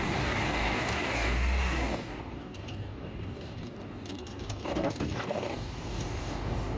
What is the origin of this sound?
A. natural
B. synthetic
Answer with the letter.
B